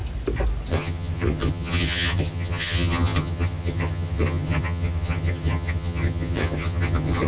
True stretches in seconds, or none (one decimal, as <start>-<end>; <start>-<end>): 0.0-0.7